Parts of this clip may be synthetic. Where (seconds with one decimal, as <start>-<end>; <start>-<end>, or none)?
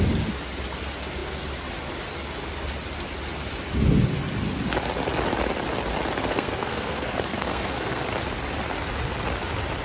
6.2-8.0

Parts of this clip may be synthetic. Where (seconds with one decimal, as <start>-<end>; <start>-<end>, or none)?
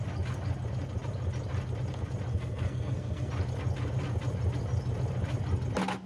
2.3-3.3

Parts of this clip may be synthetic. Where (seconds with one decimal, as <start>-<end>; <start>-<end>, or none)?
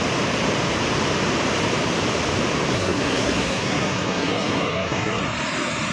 2.7-5.2